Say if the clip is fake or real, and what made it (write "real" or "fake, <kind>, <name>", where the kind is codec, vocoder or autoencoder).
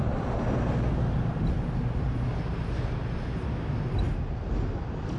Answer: real